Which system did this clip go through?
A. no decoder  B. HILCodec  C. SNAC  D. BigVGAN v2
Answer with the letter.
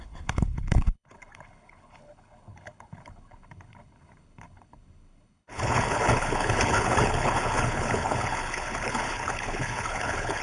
B